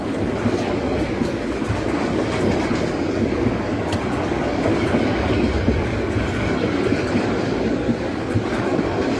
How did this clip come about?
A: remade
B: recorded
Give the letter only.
A